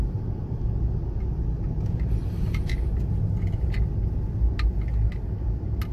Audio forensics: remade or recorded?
recorded